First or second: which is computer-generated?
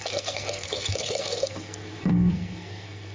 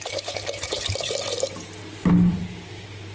first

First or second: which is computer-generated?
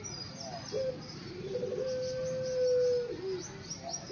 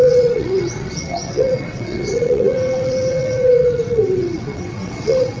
second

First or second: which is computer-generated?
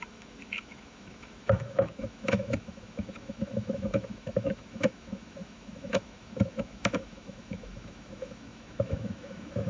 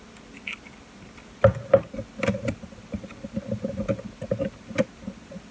first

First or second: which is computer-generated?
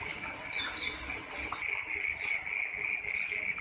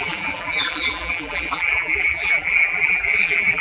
second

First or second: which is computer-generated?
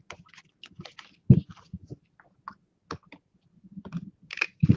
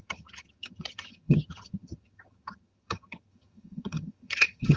second